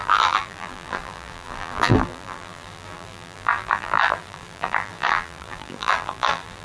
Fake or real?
fake